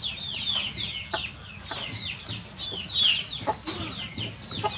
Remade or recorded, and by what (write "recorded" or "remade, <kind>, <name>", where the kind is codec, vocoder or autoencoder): recorded